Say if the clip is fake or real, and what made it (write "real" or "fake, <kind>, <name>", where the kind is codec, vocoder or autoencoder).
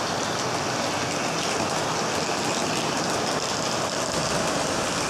real